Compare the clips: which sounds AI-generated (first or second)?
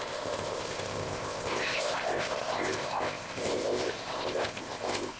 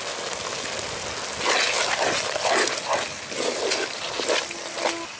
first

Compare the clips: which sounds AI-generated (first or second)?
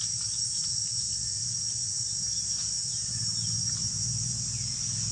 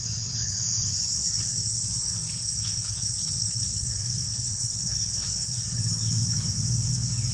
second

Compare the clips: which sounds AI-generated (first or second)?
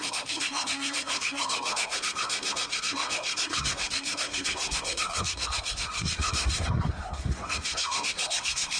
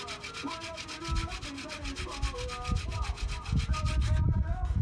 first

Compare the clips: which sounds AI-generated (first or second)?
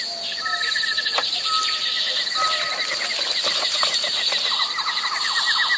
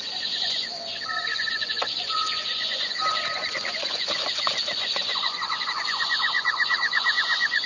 second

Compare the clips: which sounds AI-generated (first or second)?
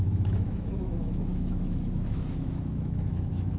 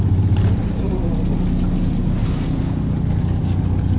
first